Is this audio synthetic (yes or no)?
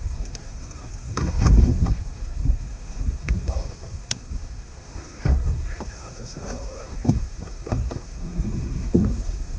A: yes